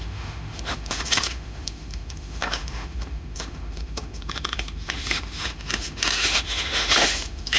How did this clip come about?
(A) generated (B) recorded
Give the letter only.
A